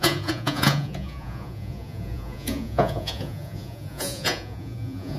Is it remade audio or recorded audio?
remade